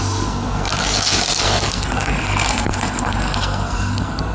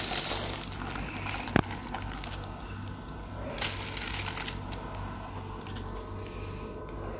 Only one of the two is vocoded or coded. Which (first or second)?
first